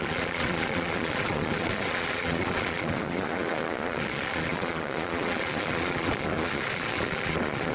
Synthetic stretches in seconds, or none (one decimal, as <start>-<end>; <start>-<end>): 0.0-7.7